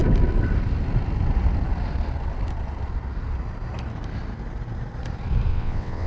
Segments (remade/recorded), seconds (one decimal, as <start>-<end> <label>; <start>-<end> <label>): 0.0-5.5 recorded; 5.5-6.1 remade